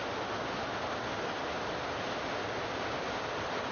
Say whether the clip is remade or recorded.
recorded